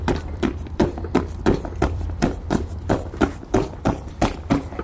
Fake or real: fake